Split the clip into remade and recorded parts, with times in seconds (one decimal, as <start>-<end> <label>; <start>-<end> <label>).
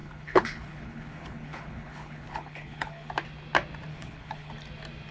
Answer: 0.0-3.1 remade; 3.1-3.9 recorded; 3.9-4.5 remade; 4.5-5.1 recorded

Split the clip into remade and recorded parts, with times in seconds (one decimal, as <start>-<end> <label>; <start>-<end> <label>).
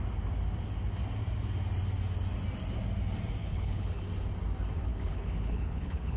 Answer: 0.0-3.4 recorded; 3.4-4.0 remade; 4.0-4.9 recorded; 4.9-6.2 remade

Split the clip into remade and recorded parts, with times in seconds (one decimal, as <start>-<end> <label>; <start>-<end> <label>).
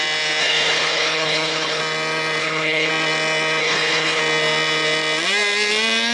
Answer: 0.0-0.4 recorded; 0.4-1.8 remade; 1.8-2.4 recorded; 2.4-2.9 remade; 2.9-3.6 recorded; 3.6-4.2 remade; 4.2-6.1 recorded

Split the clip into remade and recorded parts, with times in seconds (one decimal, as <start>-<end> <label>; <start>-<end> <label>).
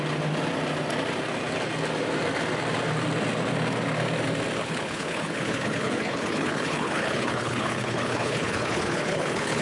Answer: 0.0-4.6 recorded; 4.6-9.6 remade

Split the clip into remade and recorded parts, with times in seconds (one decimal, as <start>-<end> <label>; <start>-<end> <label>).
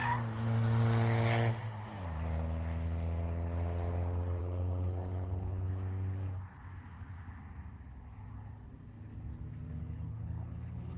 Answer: 0.0-4.4 recorded; 4.4-5.7 remade; 5.7-9.8 recorded; 9.8-11.0 remade